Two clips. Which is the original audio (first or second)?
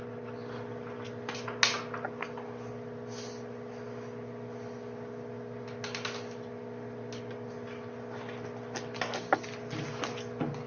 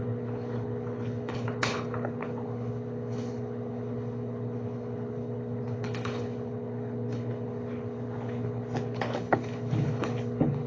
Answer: first